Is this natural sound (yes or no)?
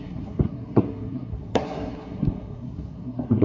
no